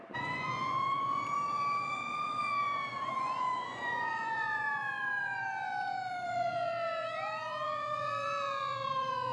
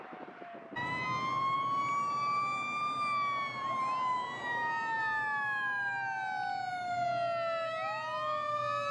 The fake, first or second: first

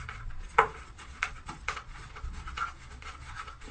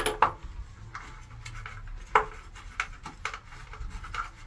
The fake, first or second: first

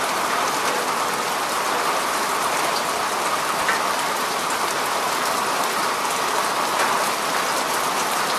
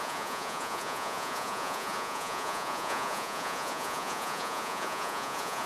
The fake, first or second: second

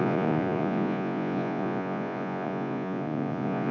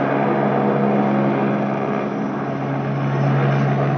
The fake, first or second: first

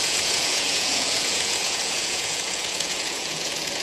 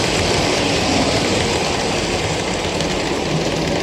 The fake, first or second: first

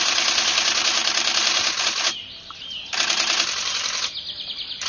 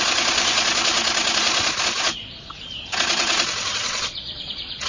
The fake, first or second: second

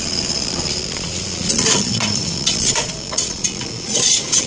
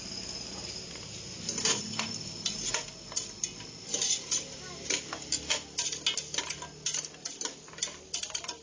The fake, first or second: first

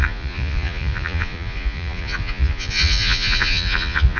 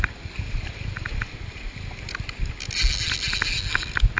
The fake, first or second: first